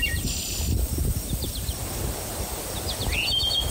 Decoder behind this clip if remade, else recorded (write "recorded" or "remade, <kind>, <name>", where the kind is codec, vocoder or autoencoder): recorded